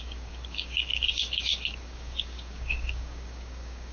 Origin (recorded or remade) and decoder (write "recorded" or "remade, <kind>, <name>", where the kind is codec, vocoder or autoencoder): remade, codec, DAC